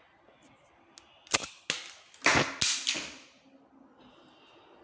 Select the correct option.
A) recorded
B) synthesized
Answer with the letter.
A